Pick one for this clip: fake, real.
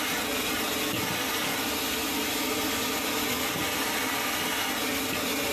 real